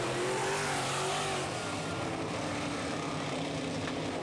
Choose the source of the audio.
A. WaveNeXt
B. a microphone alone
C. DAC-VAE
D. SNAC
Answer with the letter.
B